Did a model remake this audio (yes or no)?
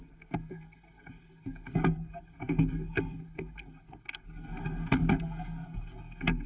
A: yes